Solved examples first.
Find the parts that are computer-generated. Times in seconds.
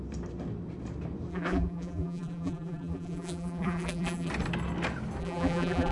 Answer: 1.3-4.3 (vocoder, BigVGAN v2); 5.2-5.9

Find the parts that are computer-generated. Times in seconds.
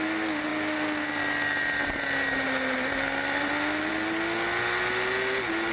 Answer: none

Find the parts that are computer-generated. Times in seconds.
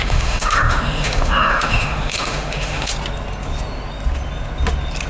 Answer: 0.0-2.9 (autoencoder, DAC-VAE)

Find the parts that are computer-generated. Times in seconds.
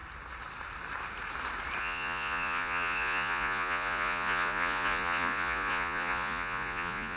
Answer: 1.8-7.2 (vocoder, Vocos)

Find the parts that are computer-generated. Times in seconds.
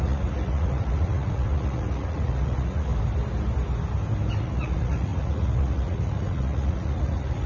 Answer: 0.0-2.9 (vocoder, Vocos); 4.4-7.5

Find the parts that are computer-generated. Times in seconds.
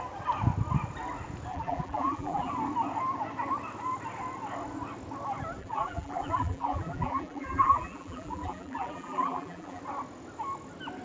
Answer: 1.5-2.5 (vocoder, BigVGAN v2); 5.6-9.8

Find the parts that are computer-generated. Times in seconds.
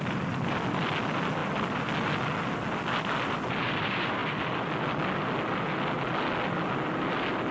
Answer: none